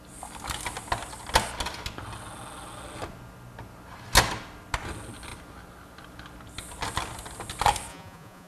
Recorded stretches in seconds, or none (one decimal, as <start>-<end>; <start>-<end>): 0.0-7.9